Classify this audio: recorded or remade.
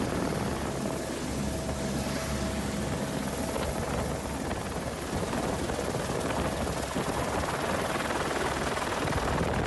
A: recorded